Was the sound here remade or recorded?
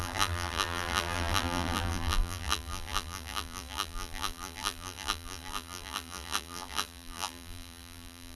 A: remade